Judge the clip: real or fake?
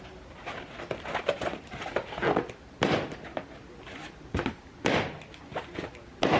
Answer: real